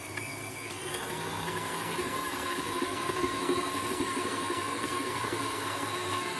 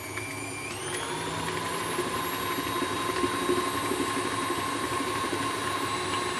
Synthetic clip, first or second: first